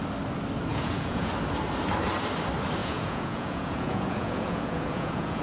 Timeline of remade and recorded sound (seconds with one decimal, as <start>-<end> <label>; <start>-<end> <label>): 0.0-0.7 recorded; 0.7-1.3 remade; 1.3-2.8 recorded; 2.8-5.4 remade